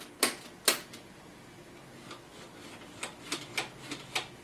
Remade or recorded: recorded